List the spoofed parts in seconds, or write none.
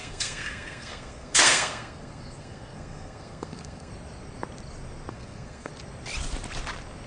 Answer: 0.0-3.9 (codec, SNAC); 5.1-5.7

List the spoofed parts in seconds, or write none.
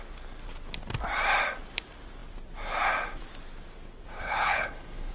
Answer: 4.2-5.1 (codec, HILCodec)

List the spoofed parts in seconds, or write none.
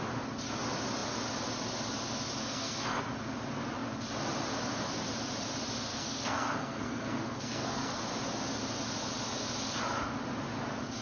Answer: 2.4-3.0 (codec, SNAC); 5.9-8.0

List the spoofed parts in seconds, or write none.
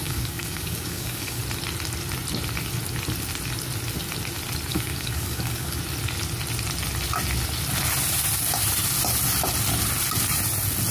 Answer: 0.0-1.4 (codec, DAC); 4.7-5.8